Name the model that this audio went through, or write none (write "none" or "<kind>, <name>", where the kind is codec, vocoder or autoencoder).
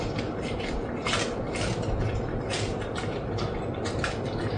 none